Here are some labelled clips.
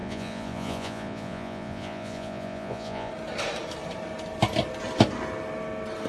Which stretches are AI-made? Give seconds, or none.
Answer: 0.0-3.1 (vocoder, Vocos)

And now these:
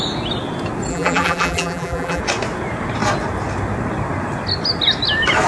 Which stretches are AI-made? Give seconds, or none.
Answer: 0.9-2.2 (vocoder, BigVGAN v2)

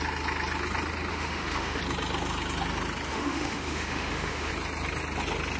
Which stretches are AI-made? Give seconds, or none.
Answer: 1.1-1.8 (autoencoder, DAC-VAE); 3.1-4.5

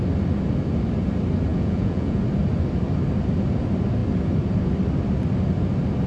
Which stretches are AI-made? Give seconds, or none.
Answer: 1.5-2.2 (vocoder, Vocos)

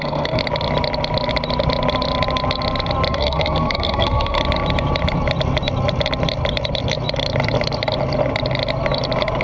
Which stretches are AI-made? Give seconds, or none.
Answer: 0.0-0.4 (codec, SNAC); 3.1-4.4

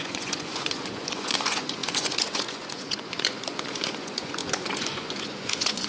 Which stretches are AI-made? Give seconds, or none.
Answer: 0.0-5.9 (vocoder, Vocos)

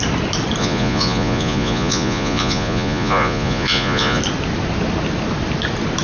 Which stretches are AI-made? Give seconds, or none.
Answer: 0.6-4.2 (vocoder, Vocos)

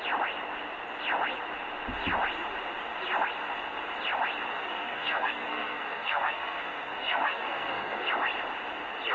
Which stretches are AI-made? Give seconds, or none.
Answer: 4.5-8.1 (codec, SNAC)